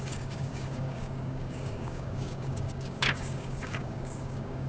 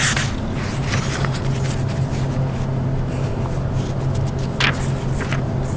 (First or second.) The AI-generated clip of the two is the first